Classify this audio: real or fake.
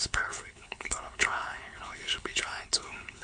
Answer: fake